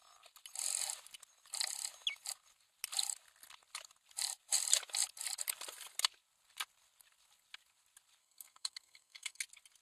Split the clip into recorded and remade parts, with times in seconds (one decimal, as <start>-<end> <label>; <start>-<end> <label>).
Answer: 0.0-8.2 recorded; 8.2-9.4 remade; 9.4-9.8 recorded